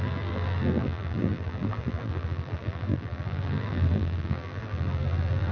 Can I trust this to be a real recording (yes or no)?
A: no